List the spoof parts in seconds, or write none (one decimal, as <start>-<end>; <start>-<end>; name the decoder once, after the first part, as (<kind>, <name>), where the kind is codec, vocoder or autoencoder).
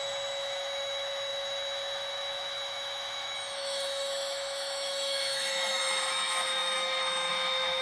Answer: 0.0-7.8 (autoencoder, DAC-VAE)